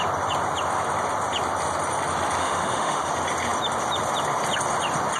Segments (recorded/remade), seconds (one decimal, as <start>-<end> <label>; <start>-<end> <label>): 0.0-2.4 recorded; 2.4-3.1 remade; 3.1-5.2 recorded